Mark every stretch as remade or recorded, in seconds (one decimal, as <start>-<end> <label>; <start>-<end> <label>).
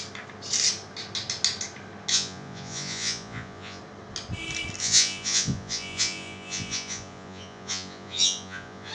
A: 0.0-2.1 recorded; 2.1-3.8 remade; 3.8-4.8 recorded; 4.8-8.9 remade